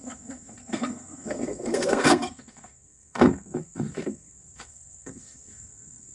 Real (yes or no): no